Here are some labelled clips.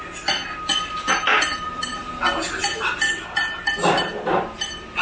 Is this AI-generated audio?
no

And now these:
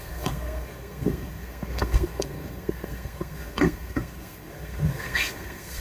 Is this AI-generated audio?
yes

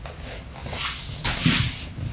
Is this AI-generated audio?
no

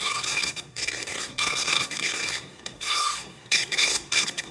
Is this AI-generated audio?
yes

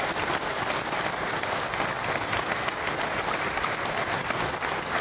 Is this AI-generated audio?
no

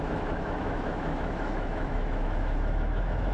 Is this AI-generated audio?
yes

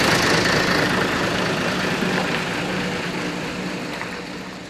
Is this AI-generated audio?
no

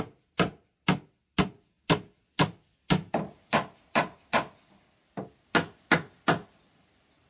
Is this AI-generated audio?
no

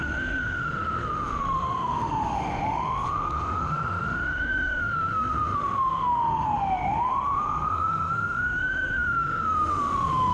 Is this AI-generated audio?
yes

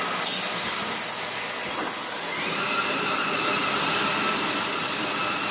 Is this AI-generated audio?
no